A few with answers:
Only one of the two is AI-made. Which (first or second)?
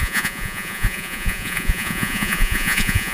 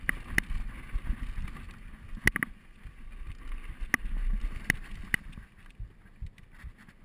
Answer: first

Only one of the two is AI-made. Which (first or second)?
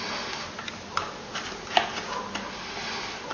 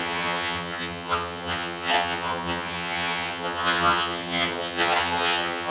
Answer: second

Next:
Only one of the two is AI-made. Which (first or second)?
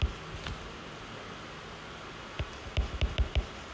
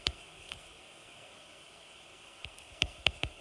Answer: second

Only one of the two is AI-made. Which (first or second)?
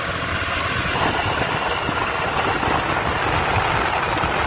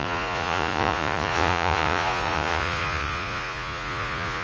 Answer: second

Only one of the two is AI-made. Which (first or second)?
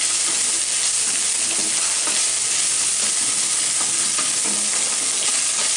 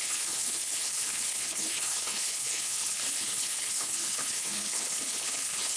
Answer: second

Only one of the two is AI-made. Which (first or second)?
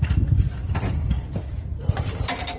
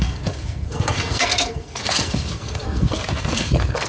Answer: second